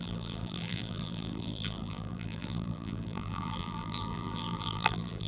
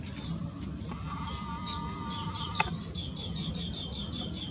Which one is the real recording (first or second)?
second